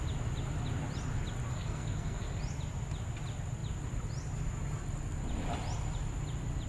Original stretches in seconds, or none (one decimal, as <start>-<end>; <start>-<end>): 0.0-1.5; 2.4-6.7